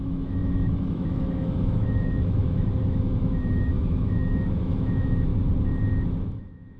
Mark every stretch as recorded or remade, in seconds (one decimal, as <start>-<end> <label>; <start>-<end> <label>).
0.0-5.3 remade; 5.3-6.3 recorded; 6.3-6.8 remade